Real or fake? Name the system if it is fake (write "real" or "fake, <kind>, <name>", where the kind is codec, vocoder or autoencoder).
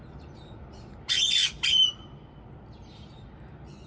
real